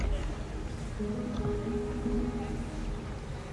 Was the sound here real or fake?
real